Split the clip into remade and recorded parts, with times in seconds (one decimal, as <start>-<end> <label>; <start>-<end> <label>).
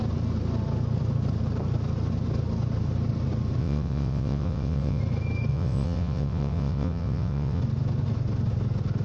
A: 0.0-3.6 recorded; 3.6-5.0 remade; 5.0-5.5 recorded; 5.5-7.6 remade; 7.6-9.0 recorded